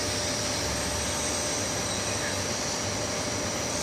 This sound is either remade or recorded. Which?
recorded